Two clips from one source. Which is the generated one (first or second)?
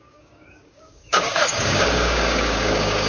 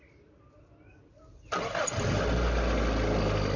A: first